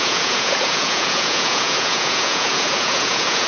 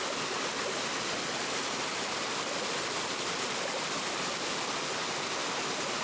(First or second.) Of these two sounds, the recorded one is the second